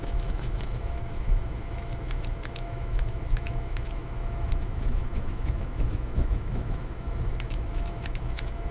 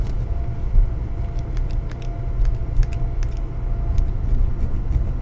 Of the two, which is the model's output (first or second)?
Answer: first